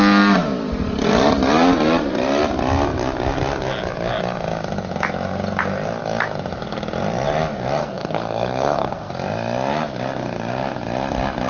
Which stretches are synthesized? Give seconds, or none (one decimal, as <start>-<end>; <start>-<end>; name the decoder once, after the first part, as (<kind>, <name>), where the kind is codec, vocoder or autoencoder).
7.8-9.1 (codec, SNAC)